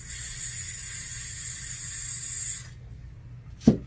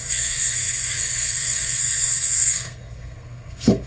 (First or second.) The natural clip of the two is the first